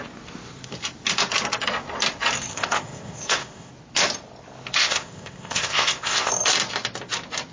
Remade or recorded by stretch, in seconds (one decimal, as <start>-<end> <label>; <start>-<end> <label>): 0.0-2.5 recorded; 2.5-3.7 remade; 3.7-4.8 recorded; 4.8-6.3 remade; 6.3-7.5 recorded